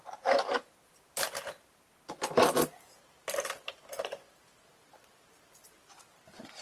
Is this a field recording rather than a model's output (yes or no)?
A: yes